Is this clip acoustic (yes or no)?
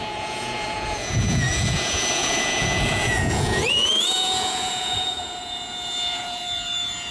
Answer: no